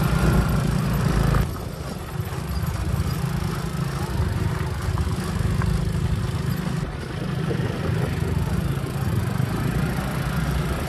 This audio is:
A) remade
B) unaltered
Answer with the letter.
B